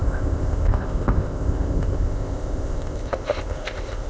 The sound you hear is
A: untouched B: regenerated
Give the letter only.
B